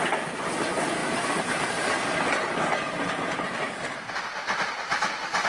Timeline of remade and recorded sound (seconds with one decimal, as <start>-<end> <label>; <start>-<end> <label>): 0.0-5.5 recorded